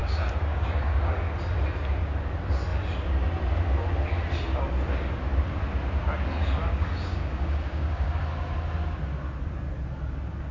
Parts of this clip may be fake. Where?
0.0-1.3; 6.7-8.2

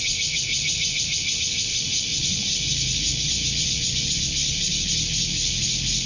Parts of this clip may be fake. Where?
none

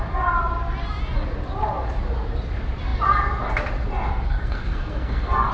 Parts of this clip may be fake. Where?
4.1-5.5

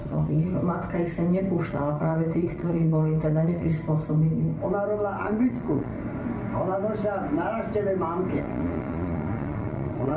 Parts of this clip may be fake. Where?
0.0-0.5; 1.7-3.7; 5.2-5.9; 8.4-10.2

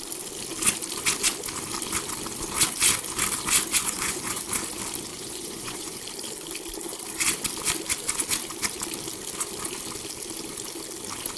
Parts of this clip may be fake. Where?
3.7-4.4; 5.1-6.0

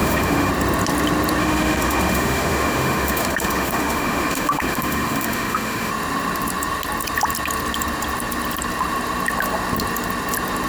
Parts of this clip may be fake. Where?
0.0-0.5; 1.4-5.9

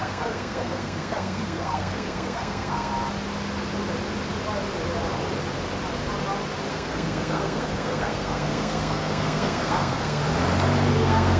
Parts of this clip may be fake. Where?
0.0-2.9; 6.7-10.2; 10.9-11.4

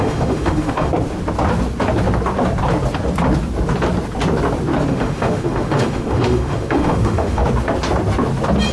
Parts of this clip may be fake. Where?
0.0-0.9; 4.9-7.4